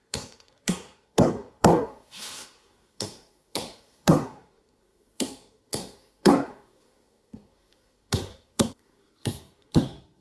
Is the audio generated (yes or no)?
yes